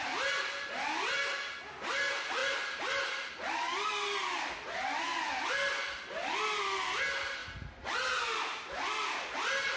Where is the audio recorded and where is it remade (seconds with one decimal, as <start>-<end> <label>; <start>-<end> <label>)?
0.0-9.8 recorded